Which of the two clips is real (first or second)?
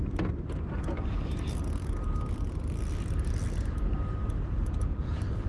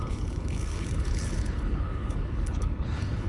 first